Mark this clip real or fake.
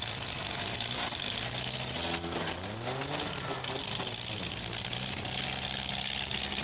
real